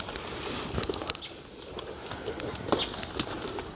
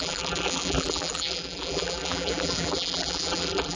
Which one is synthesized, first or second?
second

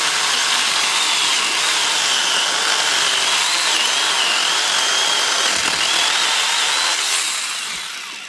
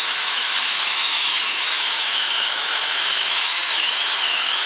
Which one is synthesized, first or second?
second